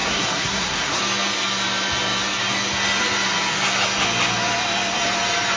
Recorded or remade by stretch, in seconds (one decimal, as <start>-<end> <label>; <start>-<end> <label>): 0.0-1.0 remade; 1.0-5.6 recorded